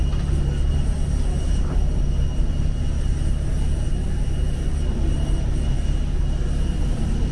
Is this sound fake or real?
real